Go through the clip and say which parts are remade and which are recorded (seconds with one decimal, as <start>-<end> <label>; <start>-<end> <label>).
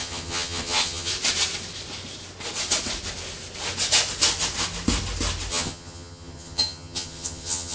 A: 0.0-1.1 remade; 1.1-5.5 recorded; 5.5-7.7 remade